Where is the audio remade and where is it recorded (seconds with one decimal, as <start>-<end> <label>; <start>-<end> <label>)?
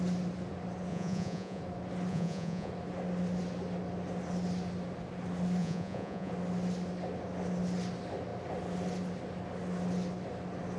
0.0-0.9 recorded; 0.9-1.6 remade; 1.6-2.1 recorded; 2.1-2.7 remade; 2.7-5.6 recorded; 5.6-6.3 remade; 6.3-10.8 recorded